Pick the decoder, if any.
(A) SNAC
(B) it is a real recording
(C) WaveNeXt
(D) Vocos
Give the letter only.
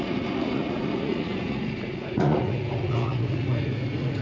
D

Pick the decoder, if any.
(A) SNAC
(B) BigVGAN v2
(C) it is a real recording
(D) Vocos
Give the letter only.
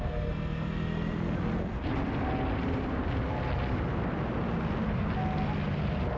C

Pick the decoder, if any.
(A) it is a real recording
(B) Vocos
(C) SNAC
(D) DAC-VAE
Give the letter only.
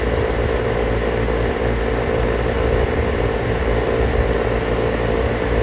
A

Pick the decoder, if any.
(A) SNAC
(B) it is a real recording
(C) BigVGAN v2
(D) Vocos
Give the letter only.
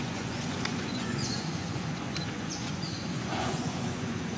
D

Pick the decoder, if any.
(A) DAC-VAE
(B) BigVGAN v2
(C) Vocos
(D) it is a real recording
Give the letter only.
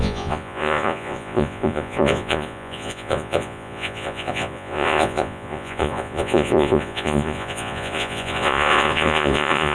C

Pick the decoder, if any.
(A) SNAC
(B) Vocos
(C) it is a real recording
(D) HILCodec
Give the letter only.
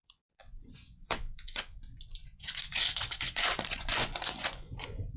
B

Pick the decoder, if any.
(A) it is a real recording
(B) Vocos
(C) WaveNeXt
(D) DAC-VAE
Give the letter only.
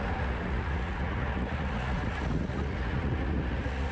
B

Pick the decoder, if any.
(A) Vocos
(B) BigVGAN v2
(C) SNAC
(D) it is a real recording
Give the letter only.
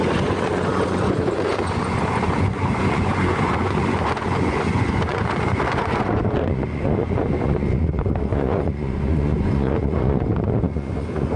A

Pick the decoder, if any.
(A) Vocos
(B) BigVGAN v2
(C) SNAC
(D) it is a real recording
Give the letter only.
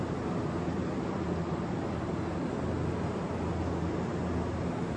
D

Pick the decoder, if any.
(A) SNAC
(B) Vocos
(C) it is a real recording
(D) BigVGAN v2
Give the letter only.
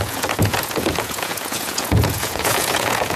B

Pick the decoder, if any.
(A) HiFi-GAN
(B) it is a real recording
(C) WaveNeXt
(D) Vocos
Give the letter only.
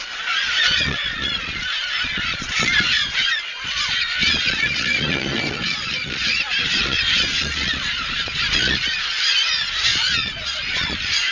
D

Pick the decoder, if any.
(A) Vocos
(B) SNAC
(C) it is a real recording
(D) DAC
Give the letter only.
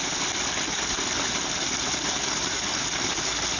C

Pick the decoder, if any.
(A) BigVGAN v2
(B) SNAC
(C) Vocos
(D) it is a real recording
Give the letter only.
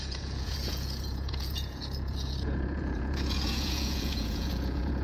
C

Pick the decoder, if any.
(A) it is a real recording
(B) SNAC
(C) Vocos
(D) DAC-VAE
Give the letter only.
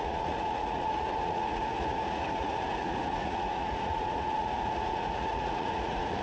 C